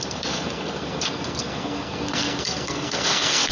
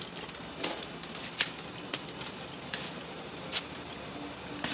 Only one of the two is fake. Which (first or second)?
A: first